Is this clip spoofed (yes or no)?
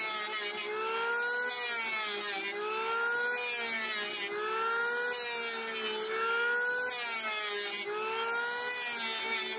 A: no